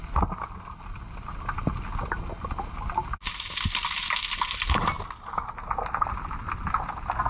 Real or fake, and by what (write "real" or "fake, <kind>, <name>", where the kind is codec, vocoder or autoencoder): real